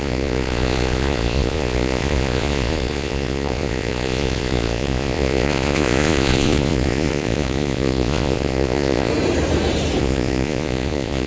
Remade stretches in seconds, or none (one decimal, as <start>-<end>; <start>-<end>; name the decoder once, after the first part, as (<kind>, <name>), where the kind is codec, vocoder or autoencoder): 0.0-9.1 (vocoder, Vocos); 10.0-11.3